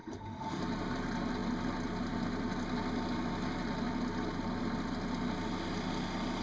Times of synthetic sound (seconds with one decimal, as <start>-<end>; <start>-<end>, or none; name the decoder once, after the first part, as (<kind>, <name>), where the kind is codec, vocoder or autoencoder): 0.0-0.6 (autoencoder, DAC-VAE)